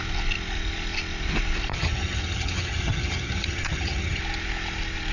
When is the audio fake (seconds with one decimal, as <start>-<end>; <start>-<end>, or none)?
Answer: 1.7-4.2